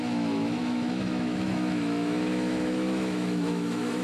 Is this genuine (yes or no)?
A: no